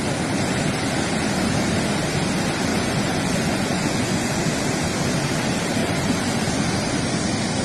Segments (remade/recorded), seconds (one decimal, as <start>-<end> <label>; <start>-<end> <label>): 0.0-2.7 recorded; 2.7-4.3 remade; 4.3-5.8 recorded; 5.8-6.7 remade; 6.7-7.6 recorded